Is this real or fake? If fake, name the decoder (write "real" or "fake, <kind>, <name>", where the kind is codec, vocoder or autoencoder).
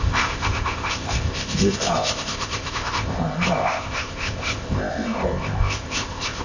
fake, codec, ZipCodec